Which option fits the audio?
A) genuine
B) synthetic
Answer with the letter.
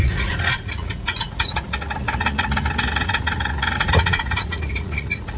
B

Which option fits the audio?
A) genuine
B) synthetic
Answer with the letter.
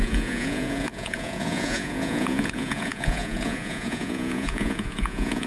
B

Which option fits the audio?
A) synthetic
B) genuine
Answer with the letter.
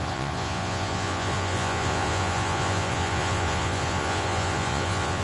A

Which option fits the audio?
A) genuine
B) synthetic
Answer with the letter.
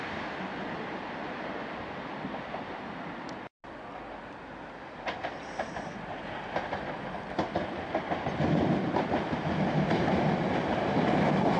A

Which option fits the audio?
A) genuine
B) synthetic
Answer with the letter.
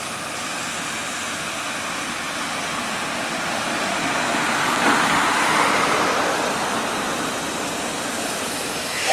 A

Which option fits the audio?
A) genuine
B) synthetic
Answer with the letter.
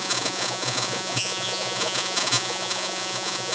B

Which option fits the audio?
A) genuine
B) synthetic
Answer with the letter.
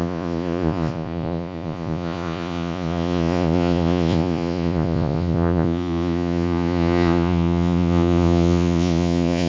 B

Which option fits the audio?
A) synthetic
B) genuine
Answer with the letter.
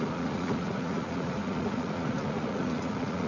A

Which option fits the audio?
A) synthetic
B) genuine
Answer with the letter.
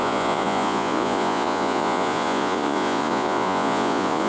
A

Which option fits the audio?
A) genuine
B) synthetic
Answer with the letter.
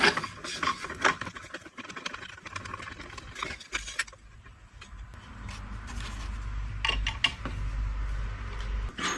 A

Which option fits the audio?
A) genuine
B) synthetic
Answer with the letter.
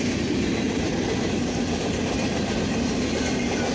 A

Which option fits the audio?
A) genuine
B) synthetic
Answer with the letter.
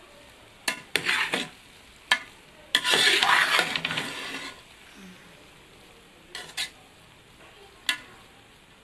A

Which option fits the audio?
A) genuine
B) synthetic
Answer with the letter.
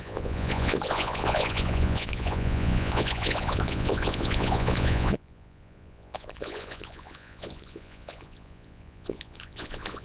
B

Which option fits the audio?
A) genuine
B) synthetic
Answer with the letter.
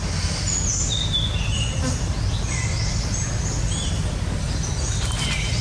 A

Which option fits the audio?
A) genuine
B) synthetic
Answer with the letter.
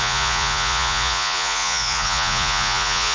B